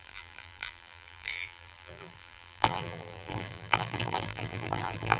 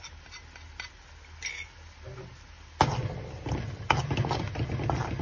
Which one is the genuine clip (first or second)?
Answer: second